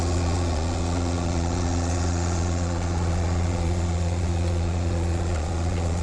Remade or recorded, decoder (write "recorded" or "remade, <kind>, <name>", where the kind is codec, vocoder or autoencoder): remade, vocoder, Vocos